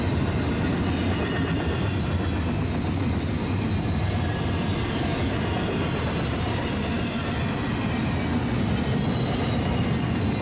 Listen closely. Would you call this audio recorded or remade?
recorded